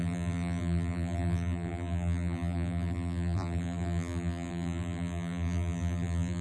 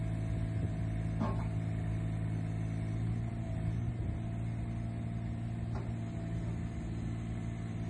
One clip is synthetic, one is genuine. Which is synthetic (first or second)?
first